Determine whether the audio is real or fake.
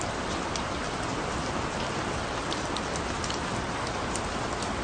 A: real